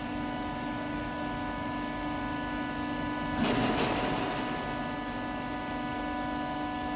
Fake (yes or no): no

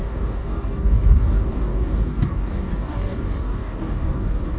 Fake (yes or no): yes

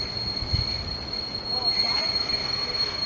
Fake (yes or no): no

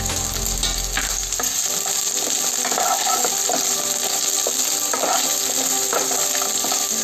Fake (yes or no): no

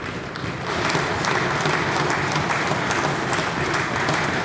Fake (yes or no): no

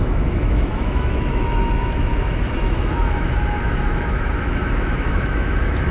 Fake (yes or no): yes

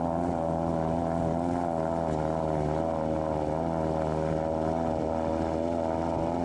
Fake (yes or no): no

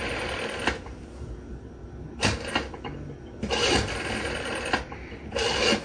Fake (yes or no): no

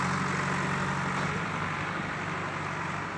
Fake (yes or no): no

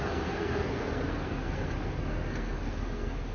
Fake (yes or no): yes